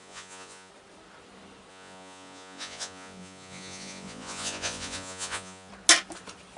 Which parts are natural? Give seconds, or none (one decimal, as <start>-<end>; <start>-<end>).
0.7-1.7; 5.7-6.6